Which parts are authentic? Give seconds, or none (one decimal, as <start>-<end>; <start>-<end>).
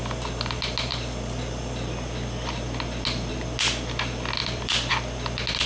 0.0-4.4; 4.9-5.7